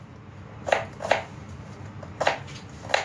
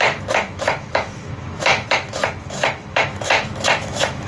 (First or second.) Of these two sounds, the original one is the first